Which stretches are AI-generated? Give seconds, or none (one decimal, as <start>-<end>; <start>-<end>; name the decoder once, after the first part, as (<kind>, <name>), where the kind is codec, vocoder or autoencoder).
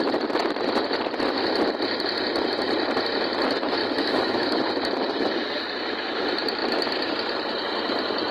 3.8-4.6 (autoencoder, DAC-VAE)